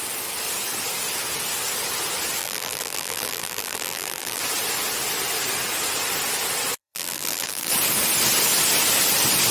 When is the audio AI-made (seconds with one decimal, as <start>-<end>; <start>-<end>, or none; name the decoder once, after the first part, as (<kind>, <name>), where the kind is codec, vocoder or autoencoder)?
2.4-4.4 (vocoder, BigVGAN v2); 6.8-7.7